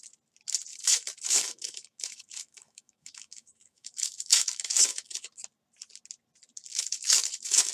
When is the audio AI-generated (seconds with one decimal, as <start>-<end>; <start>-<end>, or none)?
0.7-5.3; 6.7-7.7